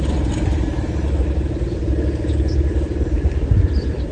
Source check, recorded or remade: recorded